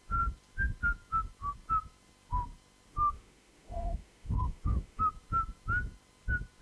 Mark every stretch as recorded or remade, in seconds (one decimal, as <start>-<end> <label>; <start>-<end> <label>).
0.0-2.9 recorded; 2.9-5.1 remade; 5.1-6.6 recorded